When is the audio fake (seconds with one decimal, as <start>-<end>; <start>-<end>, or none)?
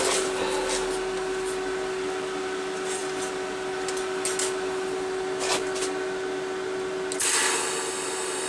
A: none